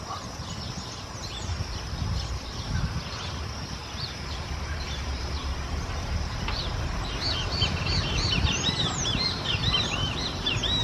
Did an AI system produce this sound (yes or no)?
yes